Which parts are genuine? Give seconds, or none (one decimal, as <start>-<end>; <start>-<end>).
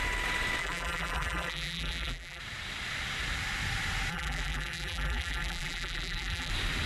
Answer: 0.0-0.6; 2.4-4.1; 6.5-6.9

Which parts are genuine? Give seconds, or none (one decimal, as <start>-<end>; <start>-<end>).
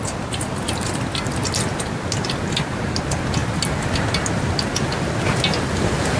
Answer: 0.0-6.2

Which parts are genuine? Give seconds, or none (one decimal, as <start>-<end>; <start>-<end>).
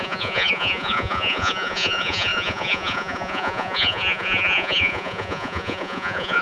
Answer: none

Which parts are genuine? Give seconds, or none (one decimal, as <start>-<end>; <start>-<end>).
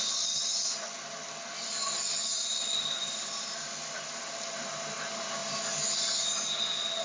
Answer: 0.0-7.0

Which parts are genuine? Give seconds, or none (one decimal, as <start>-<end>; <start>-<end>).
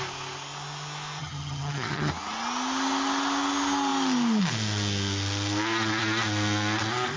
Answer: 0.0-1.2; 2.1-7.2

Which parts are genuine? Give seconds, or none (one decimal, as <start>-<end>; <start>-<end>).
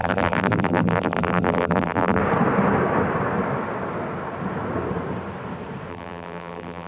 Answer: 2.2-5.9